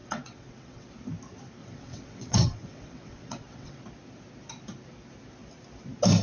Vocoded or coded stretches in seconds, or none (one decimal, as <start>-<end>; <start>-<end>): 0.0-0.9; 1.6-3.8